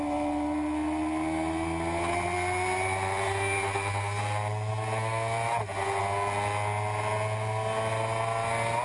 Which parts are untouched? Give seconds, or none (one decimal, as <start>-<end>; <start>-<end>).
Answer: 0.0-8.8

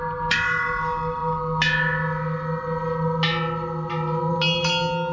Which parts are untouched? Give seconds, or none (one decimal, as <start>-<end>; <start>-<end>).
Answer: 0.0-5.1

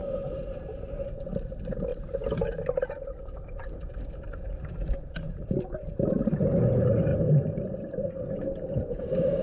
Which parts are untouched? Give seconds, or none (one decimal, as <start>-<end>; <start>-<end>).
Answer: 1.3-1.9; 6.6-7.1

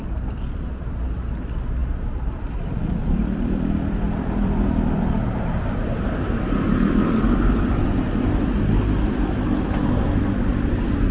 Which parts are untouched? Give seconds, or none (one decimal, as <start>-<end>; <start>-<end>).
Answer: 0.0-1.8; 5.0-11.1

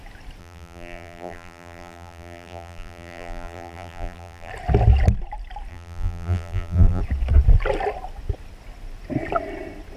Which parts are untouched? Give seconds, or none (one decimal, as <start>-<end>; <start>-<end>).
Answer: 0.0-0.4; 4.5-5.7; 7.0-10.0

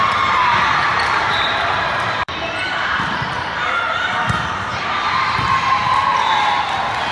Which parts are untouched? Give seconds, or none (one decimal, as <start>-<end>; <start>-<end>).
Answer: 0.0-0.9; 2.3-7.1